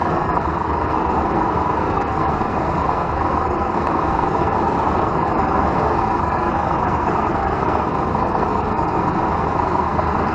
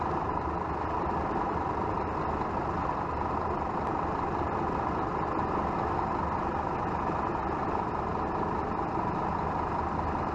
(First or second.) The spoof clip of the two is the first